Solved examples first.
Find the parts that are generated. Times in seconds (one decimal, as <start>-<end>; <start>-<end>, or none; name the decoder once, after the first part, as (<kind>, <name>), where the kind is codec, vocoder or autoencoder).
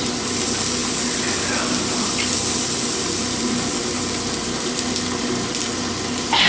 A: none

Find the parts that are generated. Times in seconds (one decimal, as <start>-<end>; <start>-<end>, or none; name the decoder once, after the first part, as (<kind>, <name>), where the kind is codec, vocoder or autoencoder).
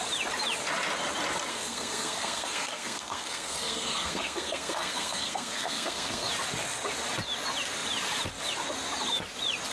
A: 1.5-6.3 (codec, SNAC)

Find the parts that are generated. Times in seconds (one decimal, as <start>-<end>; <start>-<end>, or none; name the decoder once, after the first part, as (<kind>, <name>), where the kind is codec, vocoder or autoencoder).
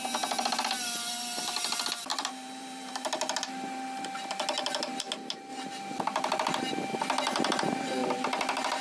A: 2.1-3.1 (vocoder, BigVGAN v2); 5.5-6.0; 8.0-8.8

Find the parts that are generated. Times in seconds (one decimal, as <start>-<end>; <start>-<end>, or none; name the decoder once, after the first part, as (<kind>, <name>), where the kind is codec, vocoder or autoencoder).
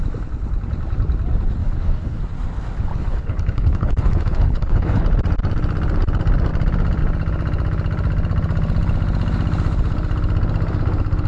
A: 1.6-2.2 (codec, HILCodec); 2.9-5.0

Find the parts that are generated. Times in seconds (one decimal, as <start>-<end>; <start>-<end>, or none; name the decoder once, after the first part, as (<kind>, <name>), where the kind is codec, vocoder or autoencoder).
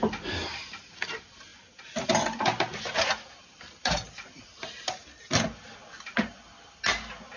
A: none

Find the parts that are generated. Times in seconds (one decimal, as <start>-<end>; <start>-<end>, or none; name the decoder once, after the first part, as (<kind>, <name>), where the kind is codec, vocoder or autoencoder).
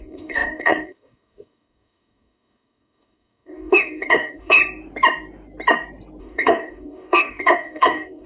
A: 0.0-4.6 (codec, DAC); 6.2-8.3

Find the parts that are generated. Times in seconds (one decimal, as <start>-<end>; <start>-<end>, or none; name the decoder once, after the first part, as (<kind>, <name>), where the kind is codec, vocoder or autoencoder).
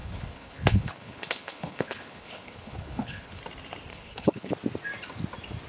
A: 0.0-3.4 (codec, HILCodec); 3.9-4.5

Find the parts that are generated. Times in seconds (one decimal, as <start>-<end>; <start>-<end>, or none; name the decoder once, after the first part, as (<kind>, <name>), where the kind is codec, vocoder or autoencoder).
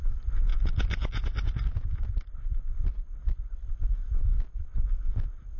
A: none